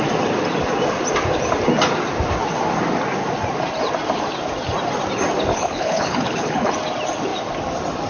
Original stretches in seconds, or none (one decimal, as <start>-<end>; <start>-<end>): 0.0-5.5; 6.7-8.1